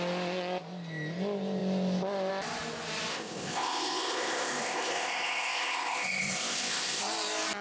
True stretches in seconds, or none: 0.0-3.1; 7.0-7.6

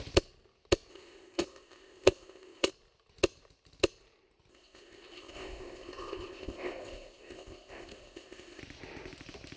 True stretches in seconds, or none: 0.0-0.9; 2.7-4.5; 8.6-9.6

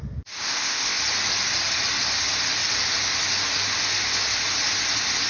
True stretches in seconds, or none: 0.0-0.4; 1.0-5.3

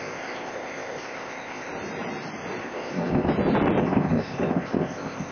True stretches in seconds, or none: 1.7-2.6; 3.3-3.8